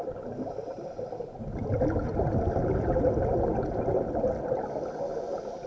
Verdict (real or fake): real